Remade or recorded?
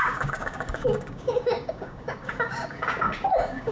remade